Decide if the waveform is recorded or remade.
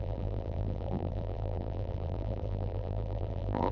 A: remade